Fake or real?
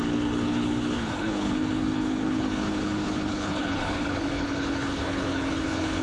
fake